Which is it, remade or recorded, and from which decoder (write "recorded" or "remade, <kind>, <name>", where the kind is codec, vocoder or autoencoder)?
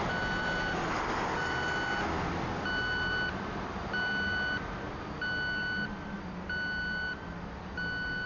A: recorded